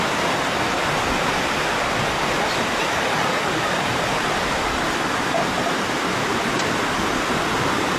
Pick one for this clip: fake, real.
real